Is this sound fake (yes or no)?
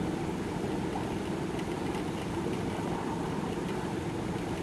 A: no